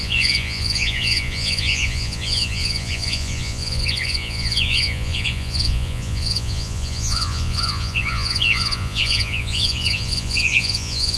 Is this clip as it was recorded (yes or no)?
no